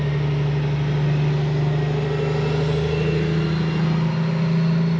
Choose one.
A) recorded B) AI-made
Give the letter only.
A